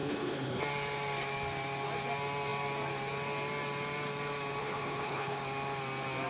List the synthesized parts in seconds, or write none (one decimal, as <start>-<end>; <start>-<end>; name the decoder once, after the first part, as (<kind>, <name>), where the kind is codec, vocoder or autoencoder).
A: 0.0-0.6 (codec, HILCodec); 4.6-5.4